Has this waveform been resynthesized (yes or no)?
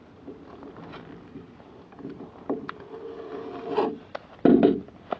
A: no